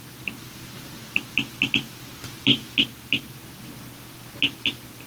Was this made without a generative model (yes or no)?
yes